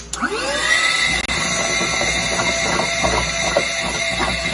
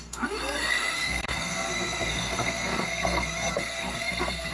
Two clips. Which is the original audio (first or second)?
first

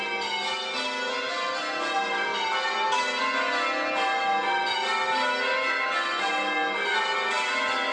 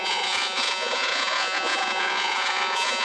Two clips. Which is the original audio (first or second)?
first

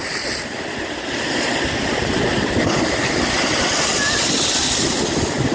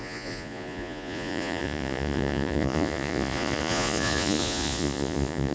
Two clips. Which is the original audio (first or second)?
first